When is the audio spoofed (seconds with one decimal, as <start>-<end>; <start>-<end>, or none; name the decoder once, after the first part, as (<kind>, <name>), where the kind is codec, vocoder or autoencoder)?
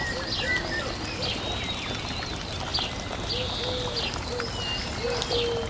none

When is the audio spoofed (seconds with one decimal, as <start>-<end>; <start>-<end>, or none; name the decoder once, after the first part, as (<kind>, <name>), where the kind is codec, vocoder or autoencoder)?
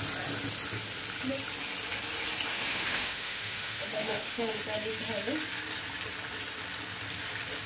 2.5-4.6 (autoencoder, DAC-VAE)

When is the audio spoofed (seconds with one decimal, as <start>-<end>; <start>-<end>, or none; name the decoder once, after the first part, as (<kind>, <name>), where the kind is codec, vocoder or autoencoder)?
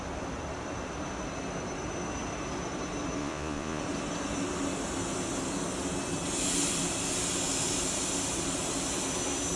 3.2-3.8 (vocoder, Vocos)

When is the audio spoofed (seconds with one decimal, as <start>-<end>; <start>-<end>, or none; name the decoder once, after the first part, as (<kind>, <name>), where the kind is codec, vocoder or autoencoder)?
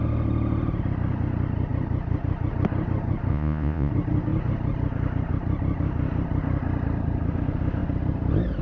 3.3-3.9 (vocoder, Vocos)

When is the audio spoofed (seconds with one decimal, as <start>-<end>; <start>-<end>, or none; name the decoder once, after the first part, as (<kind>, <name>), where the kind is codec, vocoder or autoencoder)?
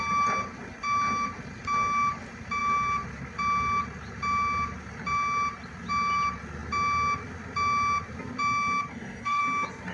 8.9-9.4 (codec, DAC)